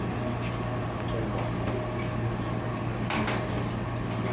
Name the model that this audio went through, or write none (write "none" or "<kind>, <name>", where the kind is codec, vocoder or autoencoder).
none